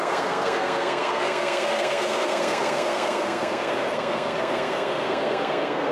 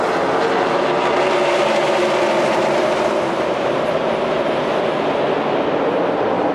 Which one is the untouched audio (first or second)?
second